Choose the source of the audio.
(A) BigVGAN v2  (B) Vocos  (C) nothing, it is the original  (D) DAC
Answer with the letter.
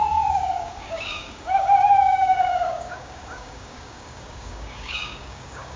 D